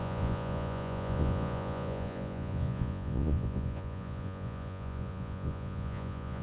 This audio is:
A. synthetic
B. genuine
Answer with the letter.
A